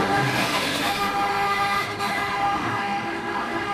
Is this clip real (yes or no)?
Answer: no